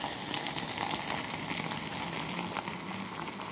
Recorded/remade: recorded